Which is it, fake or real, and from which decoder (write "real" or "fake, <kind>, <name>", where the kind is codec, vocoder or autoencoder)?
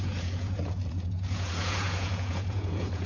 fake, vocoder, Vocos